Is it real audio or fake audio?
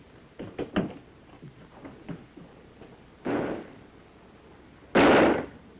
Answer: real